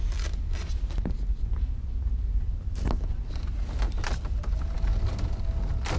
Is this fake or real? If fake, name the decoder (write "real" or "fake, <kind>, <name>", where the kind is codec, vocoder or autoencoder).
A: real